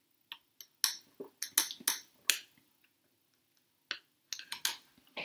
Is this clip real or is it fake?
real